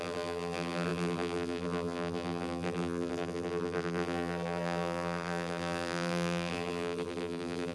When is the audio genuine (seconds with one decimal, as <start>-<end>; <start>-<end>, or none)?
none